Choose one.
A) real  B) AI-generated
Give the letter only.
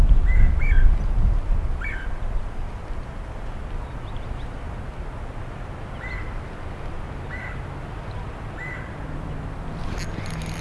A